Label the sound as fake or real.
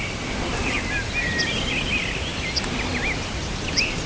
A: real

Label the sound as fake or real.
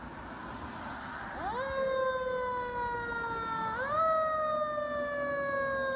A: real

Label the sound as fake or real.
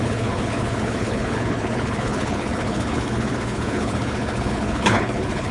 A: fake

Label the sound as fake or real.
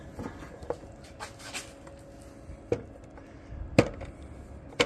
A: real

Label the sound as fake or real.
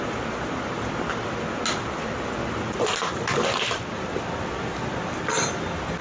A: real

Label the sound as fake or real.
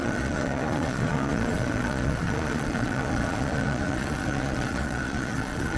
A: fake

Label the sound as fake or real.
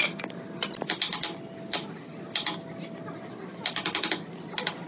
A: real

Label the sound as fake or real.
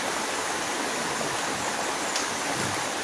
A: real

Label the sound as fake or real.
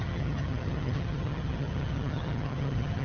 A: fake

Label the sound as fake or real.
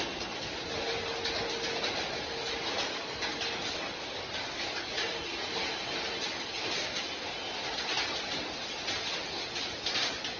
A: real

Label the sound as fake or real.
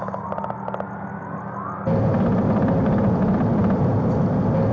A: real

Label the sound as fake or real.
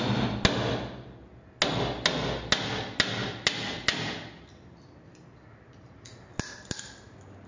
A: real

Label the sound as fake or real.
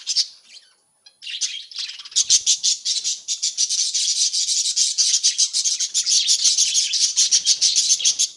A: real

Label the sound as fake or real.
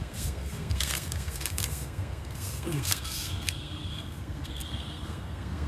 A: fake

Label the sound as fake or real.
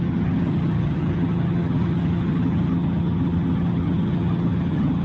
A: fake